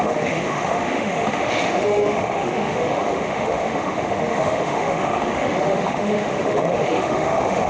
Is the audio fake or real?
fake